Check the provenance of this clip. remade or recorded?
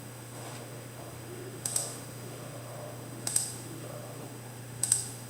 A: remade